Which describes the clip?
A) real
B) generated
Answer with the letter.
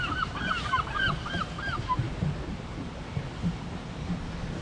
B